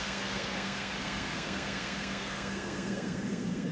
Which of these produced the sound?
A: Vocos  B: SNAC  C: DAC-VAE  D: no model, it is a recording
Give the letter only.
B